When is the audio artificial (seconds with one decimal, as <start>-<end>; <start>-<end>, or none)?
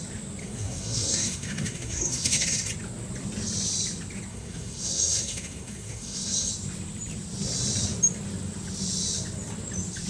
0.4-2.7; 4.3-6.5